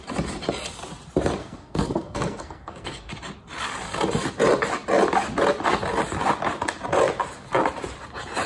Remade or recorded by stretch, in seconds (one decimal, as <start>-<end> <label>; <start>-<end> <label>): 0.0-1.4 recorded; 1.4-3.1 remade; 3.1-8.5 recorded